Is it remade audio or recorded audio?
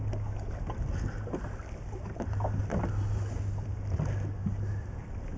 recorded